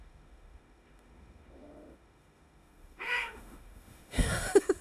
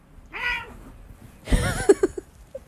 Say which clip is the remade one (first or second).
first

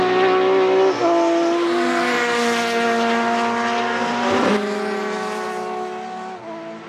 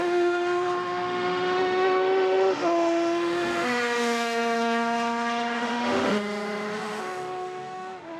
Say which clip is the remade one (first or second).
second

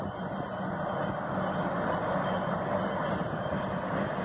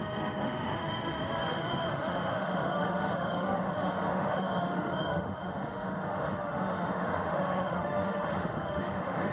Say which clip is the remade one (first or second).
second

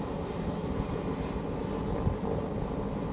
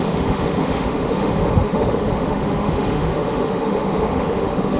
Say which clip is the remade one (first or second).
second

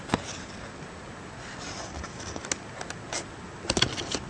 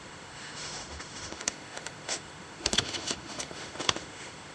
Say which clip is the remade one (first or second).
second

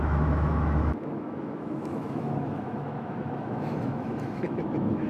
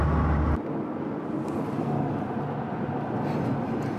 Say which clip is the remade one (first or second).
first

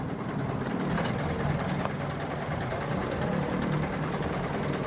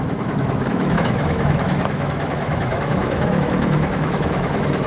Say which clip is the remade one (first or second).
second